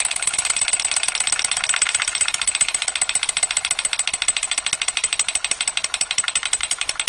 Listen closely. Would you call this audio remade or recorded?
recorded